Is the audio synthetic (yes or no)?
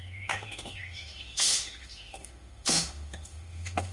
yes